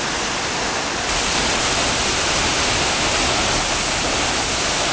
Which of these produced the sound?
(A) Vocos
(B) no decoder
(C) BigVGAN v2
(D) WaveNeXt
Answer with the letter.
B